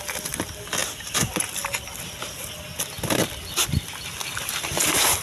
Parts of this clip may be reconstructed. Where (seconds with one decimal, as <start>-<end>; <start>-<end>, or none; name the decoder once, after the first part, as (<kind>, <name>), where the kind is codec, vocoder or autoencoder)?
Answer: none